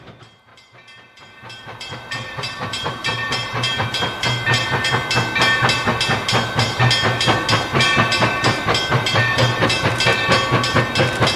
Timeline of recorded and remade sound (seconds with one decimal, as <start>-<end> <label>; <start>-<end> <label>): 0.0-0.5 recorded; 0.5-4.9 remade; 4.9-8.9 recorded; 8.9-9.9 remade; 9.9-11.4 recorded